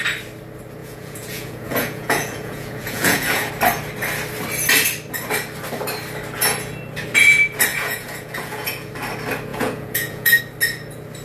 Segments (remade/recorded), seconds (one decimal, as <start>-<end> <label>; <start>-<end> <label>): 0.0-0.8 recorded; 0.8-3.5 remade; 3.5-7.7 recorded; 7.7-8.9 remade; 8.9-9.5 recorded; 9.5-10.4 remade; 10.4-11.2 recorded